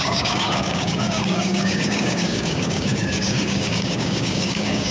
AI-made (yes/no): yes